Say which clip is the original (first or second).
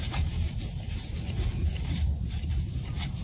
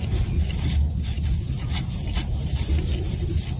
second